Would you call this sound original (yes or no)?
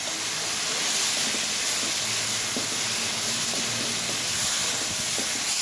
yes